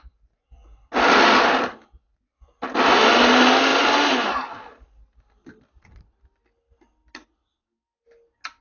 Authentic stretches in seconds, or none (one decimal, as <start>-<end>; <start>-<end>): 0.0-8.6